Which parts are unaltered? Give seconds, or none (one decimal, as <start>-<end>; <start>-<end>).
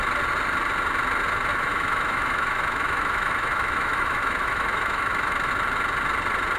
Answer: 0.0-1.5; 5.5-6.6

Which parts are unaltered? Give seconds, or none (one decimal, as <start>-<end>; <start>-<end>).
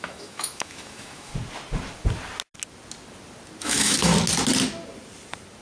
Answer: 1.3-3.6; 4.1-5.6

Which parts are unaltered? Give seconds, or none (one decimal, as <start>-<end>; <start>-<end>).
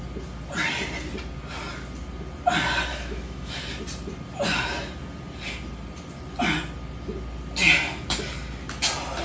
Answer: 0.0-2.9; 3.6-9.2